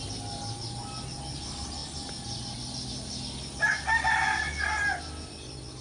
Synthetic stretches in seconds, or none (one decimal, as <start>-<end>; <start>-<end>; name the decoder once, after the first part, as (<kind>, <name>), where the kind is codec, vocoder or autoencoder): none